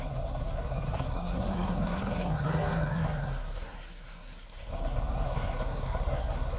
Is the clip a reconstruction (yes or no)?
yes